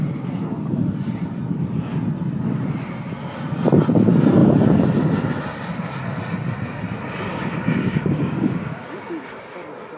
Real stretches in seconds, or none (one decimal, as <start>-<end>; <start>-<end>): 0.0-7.3; 9.2-10.0